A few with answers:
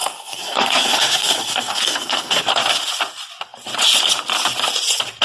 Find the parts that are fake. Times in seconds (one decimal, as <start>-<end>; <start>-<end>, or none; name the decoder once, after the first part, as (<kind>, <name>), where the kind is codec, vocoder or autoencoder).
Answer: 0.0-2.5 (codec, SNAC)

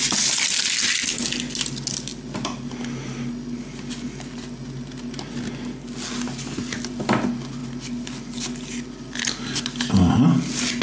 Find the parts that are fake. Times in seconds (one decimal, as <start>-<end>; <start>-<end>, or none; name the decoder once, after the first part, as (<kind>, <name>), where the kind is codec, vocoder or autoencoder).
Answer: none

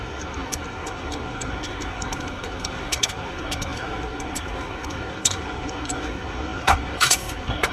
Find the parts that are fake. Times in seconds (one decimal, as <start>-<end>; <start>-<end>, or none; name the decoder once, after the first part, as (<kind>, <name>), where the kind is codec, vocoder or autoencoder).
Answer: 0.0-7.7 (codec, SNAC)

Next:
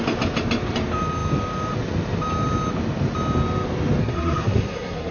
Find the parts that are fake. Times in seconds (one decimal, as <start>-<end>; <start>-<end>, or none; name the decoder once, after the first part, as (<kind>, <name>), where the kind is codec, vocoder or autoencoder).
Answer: 4.0-5.1 (codec, SNAC)

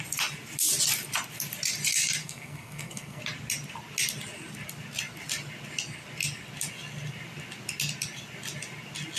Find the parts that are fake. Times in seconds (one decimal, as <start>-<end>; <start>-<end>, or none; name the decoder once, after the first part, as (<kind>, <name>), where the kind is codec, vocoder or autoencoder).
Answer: 2.2-3.2 (codec, SNAC)